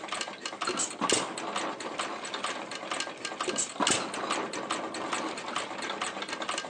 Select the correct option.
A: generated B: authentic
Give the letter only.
B